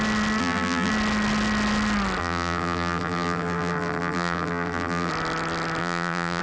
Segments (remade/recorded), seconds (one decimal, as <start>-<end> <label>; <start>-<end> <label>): 0.0-0.4 recorded; 0.4-0.9 remade; 0.9-2.2 recorded; 2.2-5.1 remade; 5.1-5.8 recorded; 5.8-6.4 remade